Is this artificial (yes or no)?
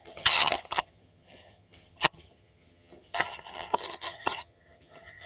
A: yes